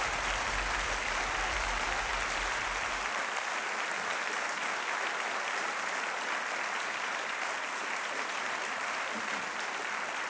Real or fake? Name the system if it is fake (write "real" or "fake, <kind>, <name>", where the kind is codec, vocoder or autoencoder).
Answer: real